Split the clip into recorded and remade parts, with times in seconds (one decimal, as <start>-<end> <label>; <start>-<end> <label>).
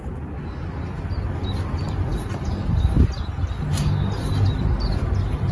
0.0-5.5 recorded